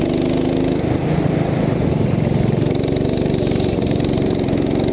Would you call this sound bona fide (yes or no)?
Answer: yes